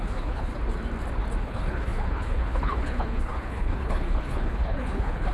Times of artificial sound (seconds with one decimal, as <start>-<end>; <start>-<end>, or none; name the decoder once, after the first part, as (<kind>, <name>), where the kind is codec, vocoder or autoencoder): 0.0-0.5 (codec, HILCodec); 1.4-5.3